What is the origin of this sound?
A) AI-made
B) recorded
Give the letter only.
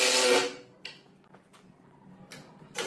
B